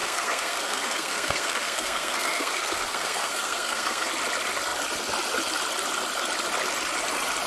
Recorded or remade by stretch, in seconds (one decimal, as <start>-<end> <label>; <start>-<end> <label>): 0.0-4.1 remade; 4.1-7.5 recorded